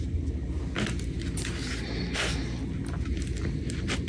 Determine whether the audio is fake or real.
real